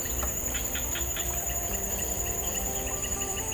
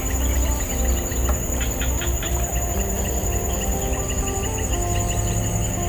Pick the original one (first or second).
second